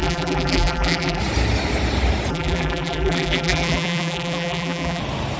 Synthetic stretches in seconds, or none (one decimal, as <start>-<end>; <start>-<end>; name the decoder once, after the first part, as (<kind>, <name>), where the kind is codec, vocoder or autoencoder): 0.0-1.2 (vocoder, BigVGAN v2); 2.3-5.0